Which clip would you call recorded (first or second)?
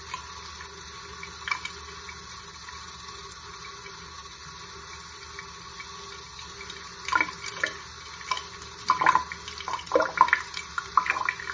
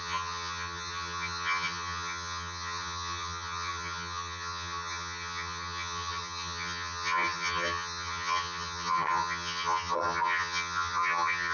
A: first